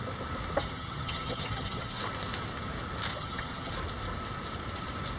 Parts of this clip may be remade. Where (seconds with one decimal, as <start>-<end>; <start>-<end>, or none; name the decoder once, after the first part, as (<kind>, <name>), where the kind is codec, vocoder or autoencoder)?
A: 0.6-2.0 (vocoder, HiFi-GAN); 3.1-3.7